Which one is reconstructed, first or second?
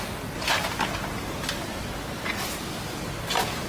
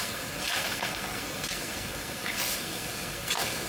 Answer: second